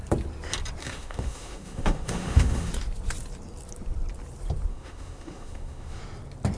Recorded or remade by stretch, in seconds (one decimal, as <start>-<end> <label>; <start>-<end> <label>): 0.0-0.8 recorded; 0.8-2.7 remade; 2.7-4.7 recorded; 4.7-6.0 remade; 6.0-6.6 recorded